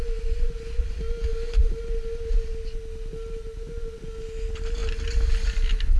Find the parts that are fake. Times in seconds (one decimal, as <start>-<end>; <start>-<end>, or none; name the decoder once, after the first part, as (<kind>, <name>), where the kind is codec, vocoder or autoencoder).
none